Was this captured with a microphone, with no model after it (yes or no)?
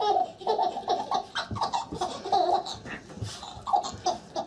yes